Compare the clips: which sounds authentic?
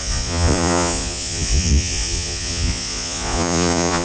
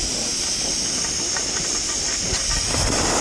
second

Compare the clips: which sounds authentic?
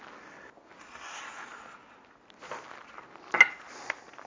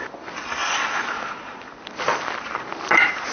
first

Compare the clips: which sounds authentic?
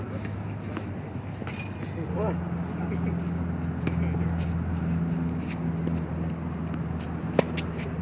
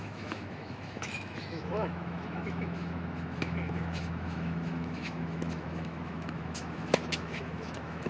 first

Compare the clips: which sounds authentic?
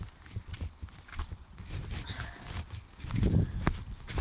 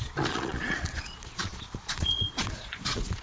first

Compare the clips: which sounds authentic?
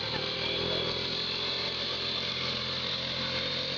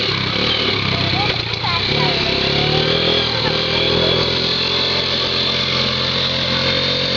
second